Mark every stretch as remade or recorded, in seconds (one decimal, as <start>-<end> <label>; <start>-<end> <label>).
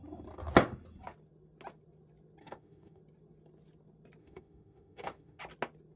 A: 0.0-2.4 recorded; 2.4-3.0 remade; 3.0-4.2 recorded; 4.2-5.4 remade; 5.4-6.0 recorded